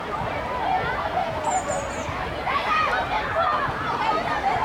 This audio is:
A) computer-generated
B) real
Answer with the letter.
B